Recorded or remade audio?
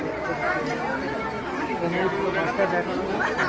recorded